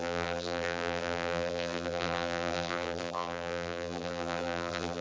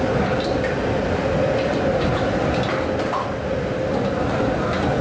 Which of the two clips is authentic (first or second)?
second